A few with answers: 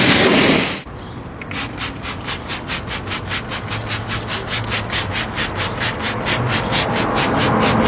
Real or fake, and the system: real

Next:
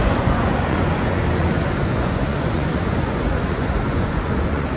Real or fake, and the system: fake, vocoder, Vocos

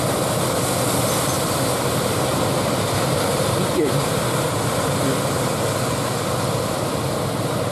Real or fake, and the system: real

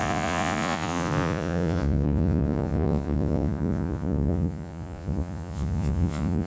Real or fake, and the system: fake, vocoder, Vocos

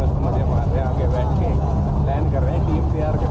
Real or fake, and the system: real